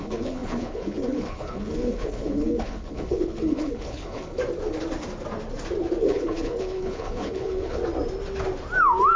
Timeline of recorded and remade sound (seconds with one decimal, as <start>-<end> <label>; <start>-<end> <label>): 0.0-4.4 remade; 4.4-6.0 recorded; 6.0-7.8 remade; 7.8-9.2 recorded